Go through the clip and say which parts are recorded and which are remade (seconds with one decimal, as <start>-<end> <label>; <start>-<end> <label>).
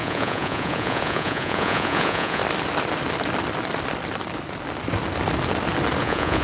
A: 0.0-2.4 remade; 2.4-6.0 recorded; 6.0-6.4 remade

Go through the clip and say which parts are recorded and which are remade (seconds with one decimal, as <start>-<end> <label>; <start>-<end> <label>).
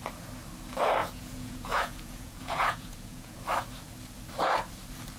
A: 0.0-1.0 recorded; 1.0-3.4 remade; 3.4-5.2 recorded